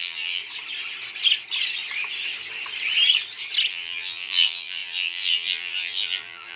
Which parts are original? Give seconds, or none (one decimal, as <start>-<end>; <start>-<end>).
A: 0.4-3.7